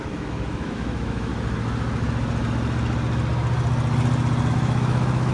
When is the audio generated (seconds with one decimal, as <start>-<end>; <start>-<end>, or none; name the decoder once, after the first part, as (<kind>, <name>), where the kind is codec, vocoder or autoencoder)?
0.0-1.3 (autoencoder, DAC-VAE); 4.5-5.3